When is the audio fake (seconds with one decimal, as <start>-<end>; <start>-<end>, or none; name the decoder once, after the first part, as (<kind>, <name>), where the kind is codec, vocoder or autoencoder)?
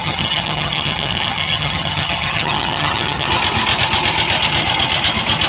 0.0-3.3 (vocoder, HiFi-GAN)